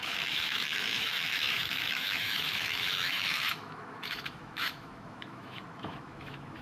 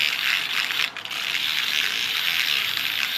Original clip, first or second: second